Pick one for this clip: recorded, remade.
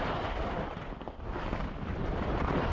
recorded